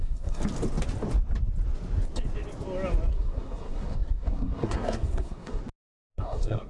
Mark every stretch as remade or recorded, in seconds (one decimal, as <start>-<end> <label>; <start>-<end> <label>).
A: 0.0-0.4 remade; 0.4-3.1 recorded; 3.1-5.6 remade; 5.6-6.1 recorded; 6.1-6.7 remade